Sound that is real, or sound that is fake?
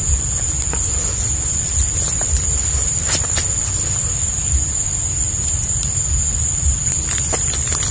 real